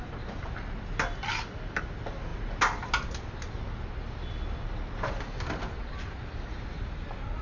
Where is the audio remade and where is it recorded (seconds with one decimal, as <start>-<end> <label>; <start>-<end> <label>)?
0.0-7.4 recorded